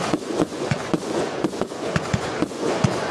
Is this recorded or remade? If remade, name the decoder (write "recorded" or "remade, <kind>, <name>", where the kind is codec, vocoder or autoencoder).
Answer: remade, vocoder, Vocos